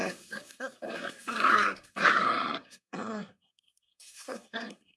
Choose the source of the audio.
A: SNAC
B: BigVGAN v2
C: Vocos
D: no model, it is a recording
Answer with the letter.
A